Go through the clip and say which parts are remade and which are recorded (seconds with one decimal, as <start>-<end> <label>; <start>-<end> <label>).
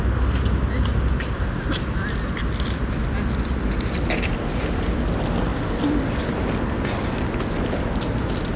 0.0-8.6 recorded